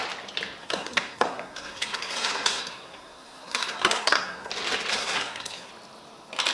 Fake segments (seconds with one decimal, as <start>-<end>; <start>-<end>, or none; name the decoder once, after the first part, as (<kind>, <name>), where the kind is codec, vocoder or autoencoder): 0.6-4.5 (codec, SNAC); 4.9-5.7